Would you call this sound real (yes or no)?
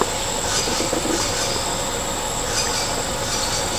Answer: yes